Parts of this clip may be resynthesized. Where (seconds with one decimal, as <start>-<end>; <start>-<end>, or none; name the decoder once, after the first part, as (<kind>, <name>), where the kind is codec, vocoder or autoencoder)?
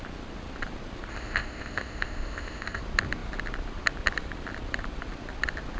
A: 1.1-2.8 (codec, ZipCodec)